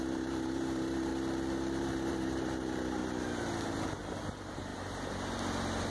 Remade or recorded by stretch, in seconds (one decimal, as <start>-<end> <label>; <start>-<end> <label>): 0.0-1.1 remade; 1.1-1.8 recorded; 1.8-3.0 remade; 3.0-3.9 recorded; 3.9-4.7 remade; 4.7-5.9 recorded